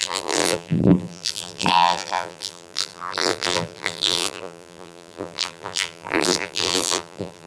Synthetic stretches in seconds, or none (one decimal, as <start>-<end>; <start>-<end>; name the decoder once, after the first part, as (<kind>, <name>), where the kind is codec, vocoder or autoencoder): 0.0-7.5 (vocoder, BigVGAN v2)